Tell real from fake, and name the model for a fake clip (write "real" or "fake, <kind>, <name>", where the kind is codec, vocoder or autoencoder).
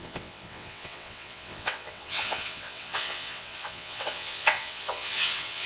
fake, vocoder, WaveNeXt